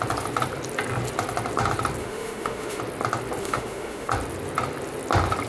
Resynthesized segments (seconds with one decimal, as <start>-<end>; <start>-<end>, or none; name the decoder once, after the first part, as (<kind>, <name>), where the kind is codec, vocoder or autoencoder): 2.0-2.8 (autoencoder, DAC-VAE); 3.4-4.1